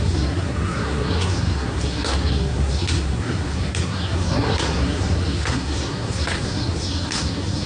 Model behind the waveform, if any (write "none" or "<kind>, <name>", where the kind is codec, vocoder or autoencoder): codec, SNAC